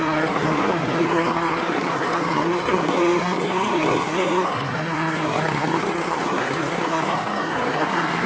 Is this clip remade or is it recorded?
remade